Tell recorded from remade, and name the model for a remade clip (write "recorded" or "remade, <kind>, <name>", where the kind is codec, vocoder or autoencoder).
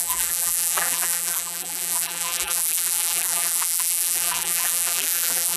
remade, vocoder, BigVGAN v2